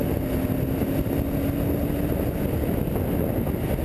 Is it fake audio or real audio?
real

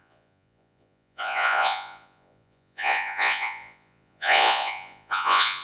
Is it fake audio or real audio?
fake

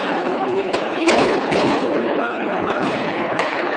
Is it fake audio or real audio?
fake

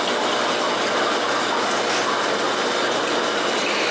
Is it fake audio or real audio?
real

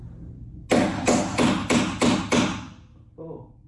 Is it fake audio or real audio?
real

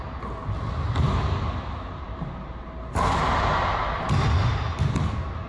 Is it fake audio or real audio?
real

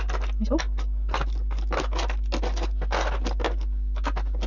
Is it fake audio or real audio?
real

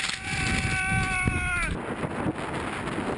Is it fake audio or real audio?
real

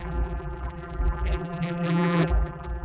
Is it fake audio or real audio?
fake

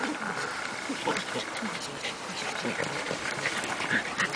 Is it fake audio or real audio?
real